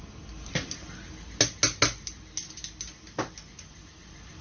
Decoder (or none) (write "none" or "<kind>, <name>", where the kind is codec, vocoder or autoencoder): none